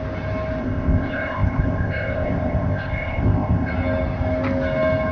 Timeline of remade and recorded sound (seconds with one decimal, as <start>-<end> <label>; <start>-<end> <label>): 0.0-0.6 recorded; 0.6-3.7 remade; 3.7-5.1 recorded